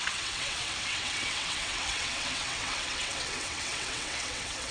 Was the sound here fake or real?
fake